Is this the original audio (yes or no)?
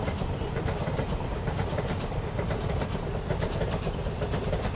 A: no